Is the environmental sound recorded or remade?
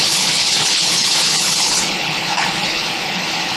remade